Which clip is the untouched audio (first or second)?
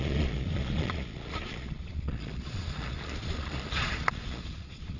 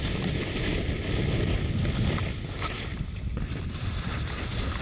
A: second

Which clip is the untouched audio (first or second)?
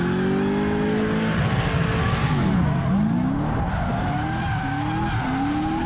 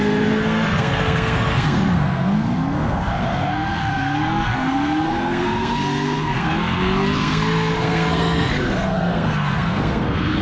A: first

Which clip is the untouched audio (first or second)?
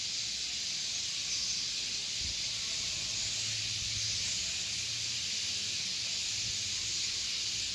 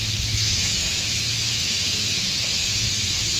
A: first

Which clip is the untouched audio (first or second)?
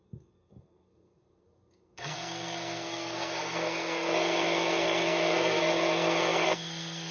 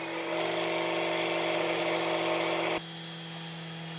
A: second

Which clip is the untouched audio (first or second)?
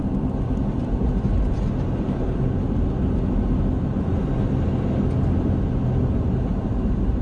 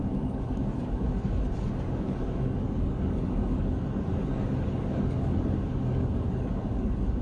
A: first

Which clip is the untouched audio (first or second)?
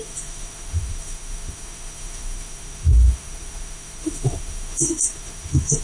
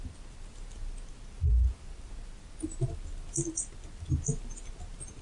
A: second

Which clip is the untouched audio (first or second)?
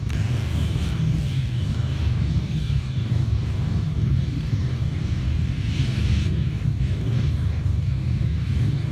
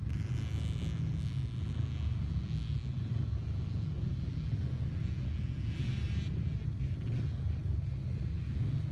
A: second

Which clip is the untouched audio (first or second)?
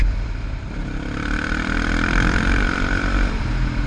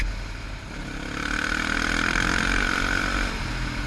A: second